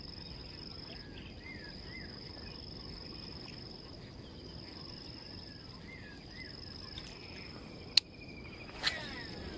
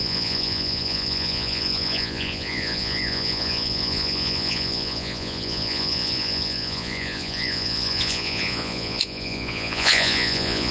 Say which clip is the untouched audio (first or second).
first